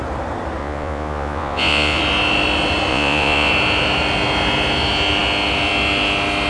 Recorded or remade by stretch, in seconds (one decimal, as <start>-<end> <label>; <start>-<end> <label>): 0.0-0.6 recorded; 0.6-2.0 remade; 2.0-2.9 recorded; 2.9-3.5 remade; 3.5-6.5 recorded

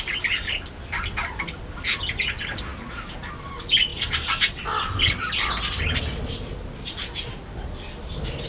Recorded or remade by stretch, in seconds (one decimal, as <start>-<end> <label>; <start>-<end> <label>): 0.0-8.5 recorded

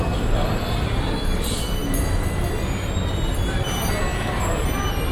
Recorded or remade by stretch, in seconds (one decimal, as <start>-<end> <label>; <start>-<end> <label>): 0.0-5.1 recorded

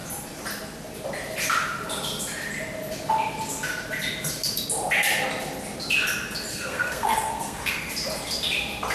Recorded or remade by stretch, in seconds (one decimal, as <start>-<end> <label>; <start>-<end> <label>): 0.0-6.5 recorded; 6.5-7.9 remade; 7.9-8.9 recorded

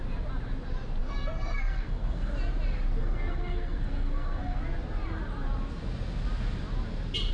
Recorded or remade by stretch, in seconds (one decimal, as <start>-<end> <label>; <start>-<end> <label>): 0.0-1.0 recorded; 1.0-2.3 remade; 2.3-3.0 recorded; 3.0-4.6 remade; 4.6-7.3 recorded